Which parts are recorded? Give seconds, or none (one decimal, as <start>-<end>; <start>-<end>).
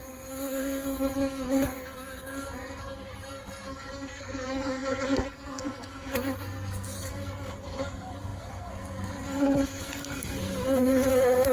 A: none